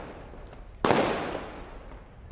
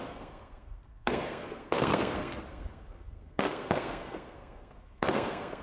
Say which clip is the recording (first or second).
first